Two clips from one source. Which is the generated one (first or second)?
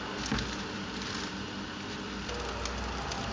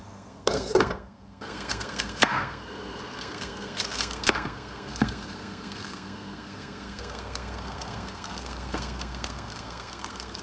second